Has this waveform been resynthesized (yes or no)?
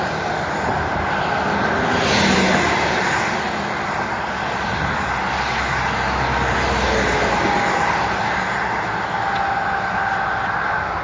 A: no